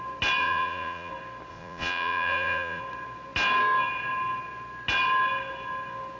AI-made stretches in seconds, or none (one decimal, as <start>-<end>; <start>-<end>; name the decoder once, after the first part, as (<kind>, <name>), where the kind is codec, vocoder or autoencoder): 0.4-1.1 (vocoder, Vocos); 1.5-2.8